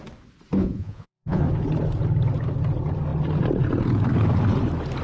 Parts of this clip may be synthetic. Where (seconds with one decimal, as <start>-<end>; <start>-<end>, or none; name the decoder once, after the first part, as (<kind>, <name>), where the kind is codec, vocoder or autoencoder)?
0.6-1.4 (vocoder, Vocos)